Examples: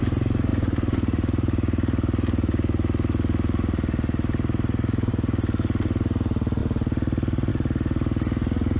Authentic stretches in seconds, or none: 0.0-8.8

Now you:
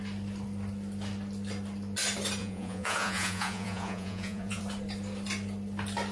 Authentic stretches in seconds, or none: 0.0-2.4; 4.6-6.1